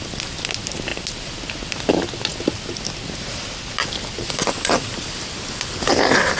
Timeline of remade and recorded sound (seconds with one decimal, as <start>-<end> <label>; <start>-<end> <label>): 0.0-6.4 recorded